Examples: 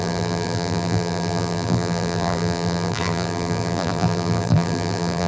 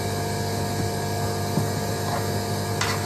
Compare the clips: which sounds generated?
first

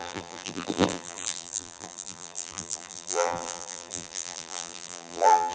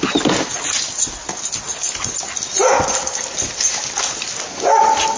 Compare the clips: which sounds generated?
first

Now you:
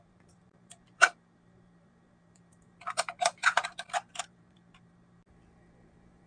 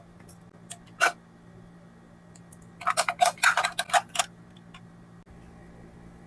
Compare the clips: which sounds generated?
first